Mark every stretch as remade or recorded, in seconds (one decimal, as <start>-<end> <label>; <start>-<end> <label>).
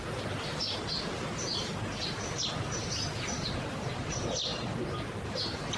0.0-5.8 recorded